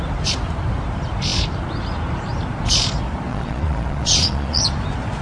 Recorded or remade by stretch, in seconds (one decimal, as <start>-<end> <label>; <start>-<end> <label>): 0.0-3.3 recorded; 3.3-4.6 remade; 4.6-5.2 recorded